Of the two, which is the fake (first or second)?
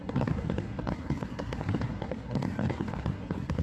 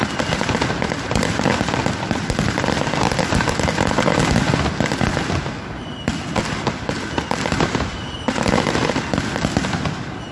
first